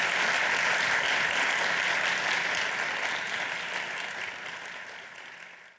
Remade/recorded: recorded